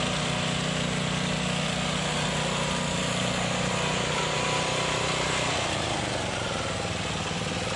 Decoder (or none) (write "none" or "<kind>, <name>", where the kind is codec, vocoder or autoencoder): none